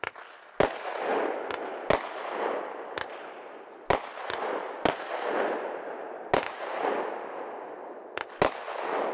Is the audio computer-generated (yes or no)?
no